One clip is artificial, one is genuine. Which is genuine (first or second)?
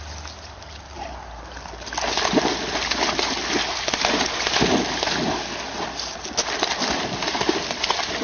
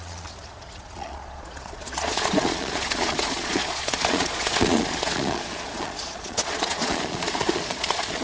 first